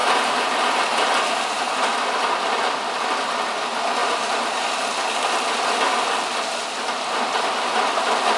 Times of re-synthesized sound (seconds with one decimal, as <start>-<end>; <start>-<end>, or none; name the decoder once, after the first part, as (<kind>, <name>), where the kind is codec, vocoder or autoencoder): 0.0-1.1 (vocoder, BigVGAN v2); 4.0-4.9